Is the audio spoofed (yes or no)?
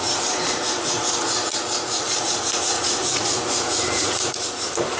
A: yes